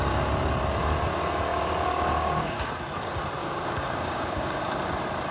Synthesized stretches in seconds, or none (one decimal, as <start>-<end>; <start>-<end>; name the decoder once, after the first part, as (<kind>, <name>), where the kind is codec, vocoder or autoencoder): 1.5-2.7 (codec, DAC); 3.4-4.6